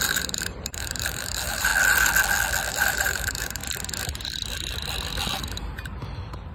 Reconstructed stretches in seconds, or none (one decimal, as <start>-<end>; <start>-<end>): 0.0-1.7; 2.7-3.6; 5.4-6.5